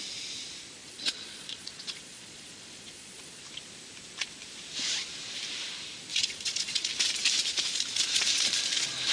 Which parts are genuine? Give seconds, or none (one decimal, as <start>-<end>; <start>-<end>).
0.0-0.8; 3.4-6.1; 6.9-9.1